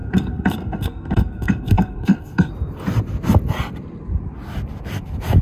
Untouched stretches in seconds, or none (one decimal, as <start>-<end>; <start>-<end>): 2.5-5.4